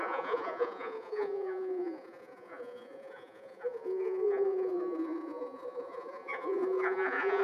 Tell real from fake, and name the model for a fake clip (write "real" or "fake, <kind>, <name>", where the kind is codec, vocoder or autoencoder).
fake, vocoder, Vocos